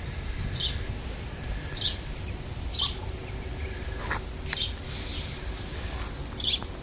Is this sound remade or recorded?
recorded